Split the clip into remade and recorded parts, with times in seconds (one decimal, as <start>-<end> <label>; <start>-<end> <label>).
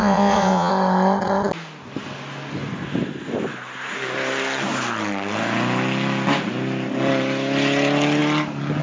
0.0-0.7 remade; 0.7-8.8 recorded